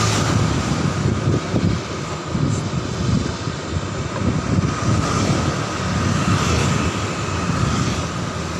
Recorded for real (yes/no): yes